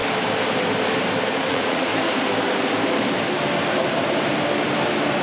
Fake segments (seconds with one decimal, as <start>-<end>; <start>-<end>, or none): 1.5-1.9

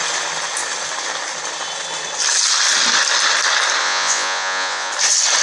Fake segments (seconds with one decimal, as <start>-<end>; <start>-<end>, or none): 3.8-4.9